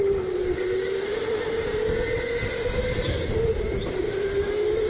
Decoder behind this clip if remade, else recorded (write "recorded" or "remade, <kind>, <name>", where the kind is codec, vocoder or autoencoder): recorded